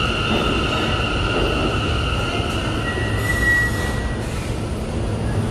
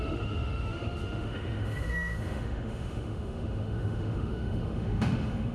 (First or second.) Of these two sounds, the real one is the first